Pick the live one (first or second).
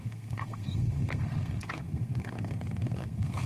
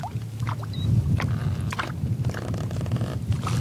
second